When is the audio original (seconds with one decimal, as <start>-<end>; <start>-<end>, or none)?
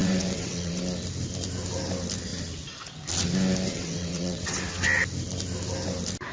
0.8-3.7; 4.6-6.3